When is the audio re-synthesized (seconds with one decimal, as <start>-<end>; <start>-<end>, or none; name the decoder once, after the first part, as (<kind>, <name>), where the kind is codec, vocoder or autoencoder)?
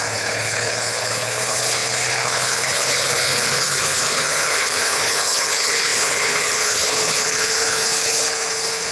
0.0-8.9 (codec, HILCodec)